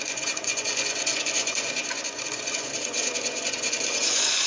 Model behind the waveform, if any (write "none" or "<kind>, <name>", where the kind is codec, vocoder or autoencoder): vocoder, Vocos